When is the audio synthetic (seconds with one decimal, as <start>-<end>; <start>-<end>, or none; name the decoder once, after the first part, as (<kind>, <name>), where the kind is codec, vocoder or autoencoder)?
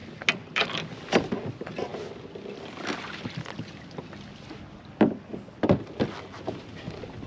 none